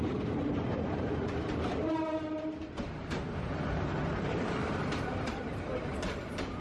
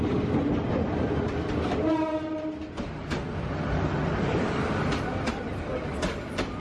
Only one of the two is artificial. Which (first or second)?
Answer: first